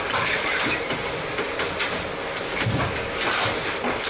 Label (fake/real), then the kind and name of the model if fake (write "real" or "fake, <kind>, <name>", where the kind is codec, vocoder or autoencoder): real